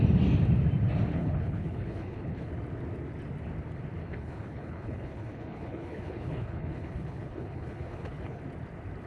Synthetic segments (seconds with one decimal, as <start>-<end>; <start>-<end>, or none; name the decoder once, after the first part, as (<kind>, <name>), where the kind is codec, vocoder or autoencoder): 1.1-2.5 (codec, HILCodec); 4.0-8.4

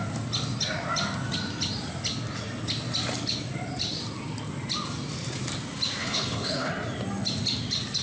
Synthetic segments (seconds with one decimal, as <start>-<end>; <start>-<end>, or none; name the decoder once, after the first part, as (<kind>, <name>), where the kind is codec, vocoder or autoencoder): 6.0-6.7 (codec, HILCodec)